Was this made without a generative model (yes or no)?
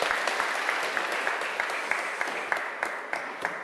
yes